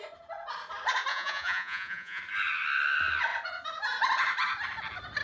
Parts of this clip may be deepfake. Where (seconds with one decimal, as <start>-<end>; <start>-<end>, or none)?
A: 1.1-2.2